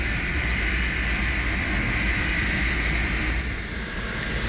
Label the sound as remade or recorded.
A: recorded